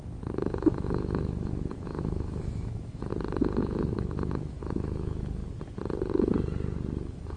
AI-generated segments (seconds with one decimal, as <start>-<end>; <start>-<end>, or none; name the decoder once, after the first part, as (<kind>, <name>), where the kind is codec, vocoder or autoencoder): 0.0-3.1 (autoencoder, DAC-VAE); 3.6-5.4; 7.0-7.4